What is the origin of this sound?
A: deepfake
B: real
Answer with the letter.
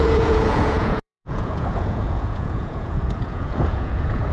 A